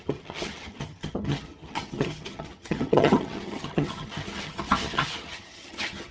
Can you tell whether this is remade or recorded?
remade